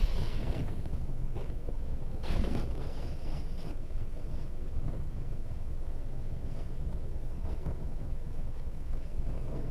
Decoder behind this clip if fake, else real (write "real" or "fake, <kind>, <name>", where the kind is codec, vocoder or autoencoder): fake, codec, SNAC